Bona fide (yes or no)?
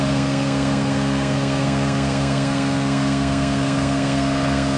no